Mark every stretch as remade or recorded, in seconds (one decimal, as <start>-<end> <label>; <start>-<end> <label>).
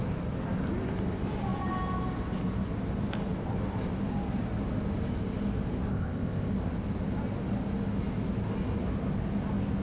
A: 0.0-5.9 recorded; 5.9-6.5 remade; 6.5-9.8 recorded